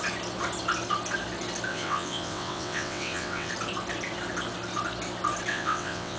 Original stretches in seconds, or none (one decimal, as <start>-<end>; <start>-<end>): 0.0-1.7; 3.5-5.5